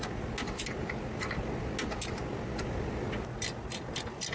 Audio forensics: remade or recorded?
recorded